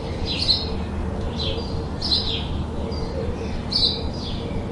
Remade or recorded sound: recorded